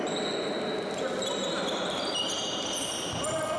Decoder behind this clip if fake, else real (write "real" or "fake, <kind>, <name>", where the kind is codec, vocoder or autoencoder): real